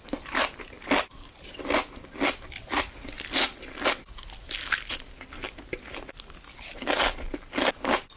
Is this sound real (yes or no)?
yes